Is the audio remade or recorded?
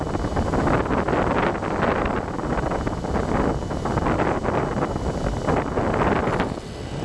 recorded